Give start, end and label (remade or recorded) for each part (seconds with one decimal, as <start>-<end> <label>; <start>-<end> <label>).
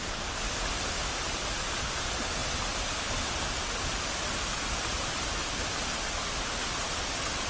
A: 0.0-2.4 recorded; 2.4-3.3 remade; 3.3-5.4 recorded; 5.4-6.0 remade; 6.0-7.5 recorded